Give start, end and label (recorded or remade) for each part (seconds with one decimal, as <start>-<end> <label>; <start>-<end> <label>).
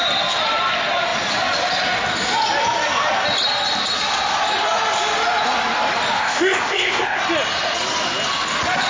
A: 0.0-6.2 recorded; 6.2-7.2 remade; 7.2-8.9 recorded